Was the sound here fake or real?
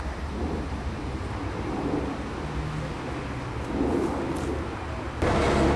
real